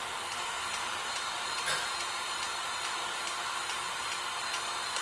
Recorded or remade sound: recorded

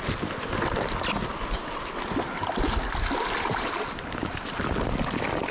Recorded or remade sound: recorded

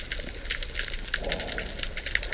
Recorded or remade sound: recorded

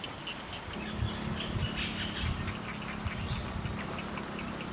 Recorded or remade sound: recorded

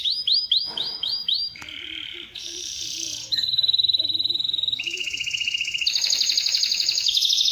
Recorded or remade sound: remade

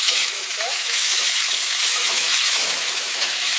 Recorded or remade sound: remade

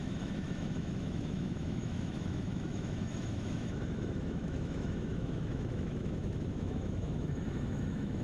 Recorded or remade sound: remade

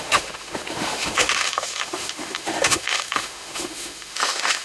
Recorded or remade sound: remade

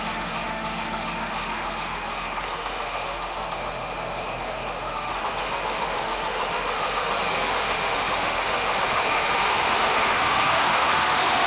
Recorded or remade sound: remade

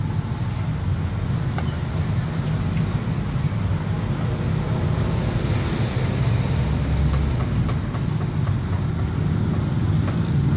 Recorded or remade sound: recorded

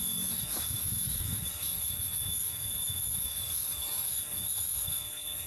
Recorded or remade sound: remade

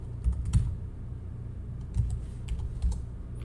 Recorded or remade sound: recorded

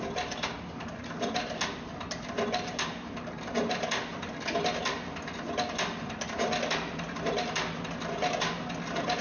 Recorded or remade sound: recorded